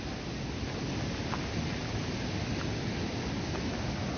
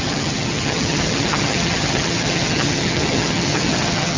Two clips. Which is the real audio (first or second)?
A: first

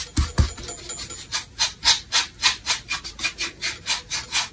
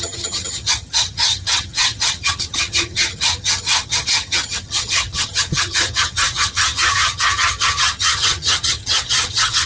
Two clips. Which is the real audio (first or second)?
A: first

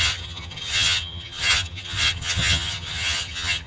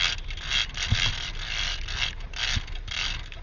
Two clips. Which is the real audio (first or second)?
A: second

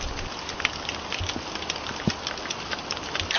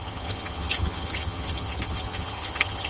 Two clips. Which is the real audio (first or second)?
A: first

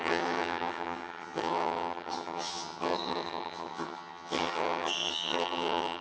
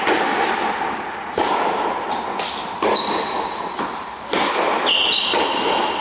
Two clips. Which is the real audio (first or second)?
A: second